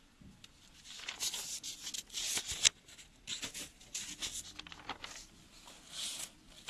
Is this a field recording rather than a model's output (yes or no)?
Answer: yes